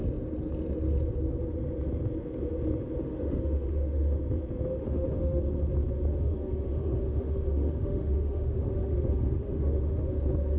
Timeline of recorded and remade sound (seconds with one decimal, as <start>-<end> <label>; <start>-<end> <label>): 0.0-3.0 recorded; 3.0-4.2 remade; 4.2-4.7 recorded; 4.7-5.4 remade; 5.4-6.1 recorded; 6.1-10.1 remade; 10.1-10.6 recorded